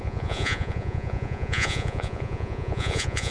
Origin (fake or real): fake